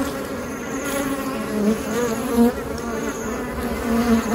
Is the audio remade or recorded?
recorded